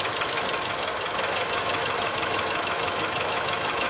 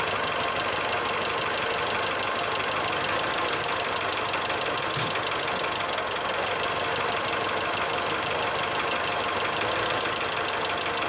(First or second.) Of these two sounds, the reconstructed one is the first